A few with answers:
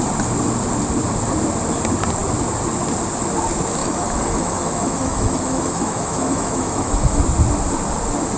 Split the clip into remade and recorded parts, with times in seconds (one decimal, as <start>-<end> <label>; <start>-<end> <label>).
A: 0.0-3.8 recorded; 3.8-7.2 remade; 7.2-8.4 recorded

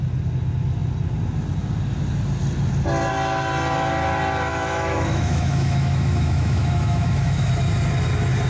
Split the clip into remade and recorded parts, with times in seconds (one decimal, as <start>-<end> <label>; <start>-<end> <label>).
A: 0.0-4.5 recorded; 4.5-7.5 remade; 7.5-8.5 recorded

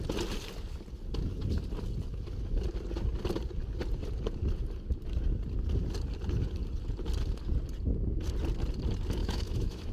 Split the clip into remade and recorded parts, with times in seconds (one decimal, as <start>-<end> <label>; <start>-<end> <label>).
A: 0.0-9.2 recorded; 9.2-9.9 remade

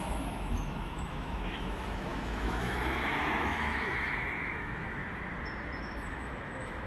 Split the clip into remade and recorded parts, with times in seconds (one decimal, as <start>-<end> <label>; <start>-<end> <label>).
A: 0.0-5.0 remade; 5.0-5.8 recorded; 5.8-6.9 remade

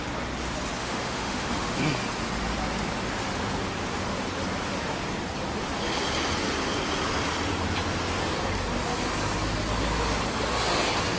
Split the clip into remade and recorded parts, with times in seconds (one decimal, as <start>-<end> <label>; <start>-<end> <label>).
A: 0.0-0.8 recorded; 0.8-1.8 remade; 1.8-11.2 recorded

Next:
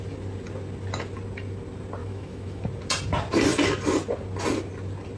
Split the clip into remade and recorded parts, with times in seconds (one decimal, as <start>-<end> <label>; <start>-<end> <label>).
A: 0.0-2.0 recorded; 2.0-2.6 remade; 2.6-5.2 recorded